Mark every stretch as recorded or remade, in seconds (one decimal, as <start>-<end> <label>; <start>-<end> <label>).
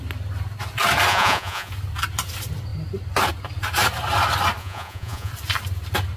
0.0-1.1 recorded; 1.1-1.7 remade; 1.7-4.6 recorded; 4.6-5.3 remade; 5.3-6.2 recorded